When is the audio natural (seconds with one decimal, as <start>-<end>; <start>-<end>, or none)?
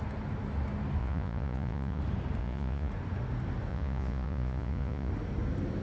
0.0-1.0; 2.0-2.4; 2.9-3.7; 5.1-5.8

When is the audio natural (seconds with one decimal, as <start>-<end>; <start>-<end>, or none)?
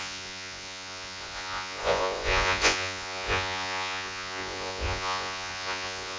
none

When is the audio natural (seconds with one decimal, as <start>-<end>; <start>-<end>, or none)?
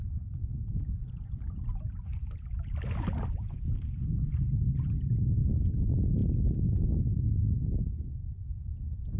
0.0-9.2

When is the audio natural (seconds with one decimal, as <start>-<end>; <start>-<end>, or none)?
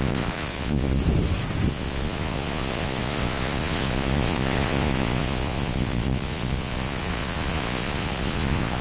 1.0-1.7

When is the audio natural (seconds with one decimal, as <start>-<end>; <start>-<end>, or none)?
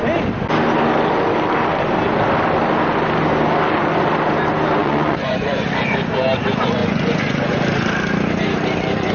0.0-4.8; 5.7-6.8; 7.6-9.1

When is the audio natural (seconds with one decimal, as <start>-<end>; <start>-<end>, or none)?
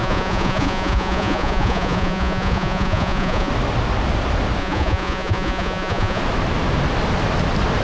3.5-4.6; 6.2-7.8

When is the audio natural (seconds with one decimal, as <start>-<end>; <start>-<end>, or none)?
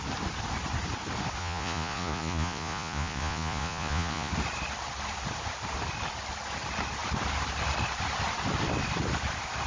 0.0-1.4; 4.3-9.7